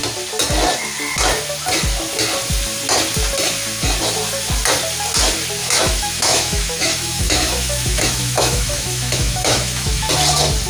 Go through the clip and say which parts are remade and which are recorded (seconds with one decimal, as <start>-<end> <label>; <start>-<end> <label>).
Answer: 0.0-5.6 recorded; 5.6-10.1 remade; 10.1-10.7 recorded